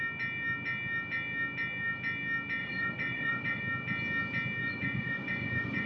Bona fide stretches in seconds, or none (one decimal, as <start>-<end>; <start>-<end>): 0.0-2.6; 3.6-4.6